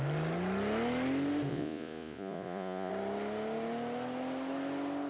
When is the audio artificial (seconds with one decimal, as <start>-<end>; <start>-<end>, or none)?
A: 1.5-2.9